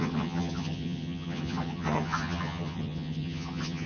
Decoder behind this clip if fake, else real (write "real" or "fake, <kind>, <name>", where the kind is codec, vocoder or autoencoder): fake, vocoder, HiFi-GAN